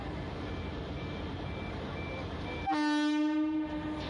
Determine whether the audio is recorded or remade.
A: recorded